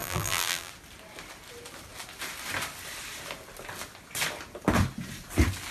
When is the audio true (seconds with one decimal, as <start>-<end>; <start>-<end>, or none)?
0.7-5.7